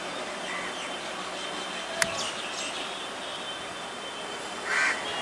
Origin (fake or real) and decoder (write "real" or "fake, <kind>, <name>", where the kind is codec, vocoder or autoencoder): real